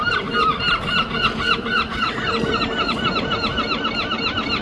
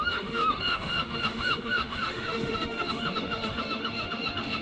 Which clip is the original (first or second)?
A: first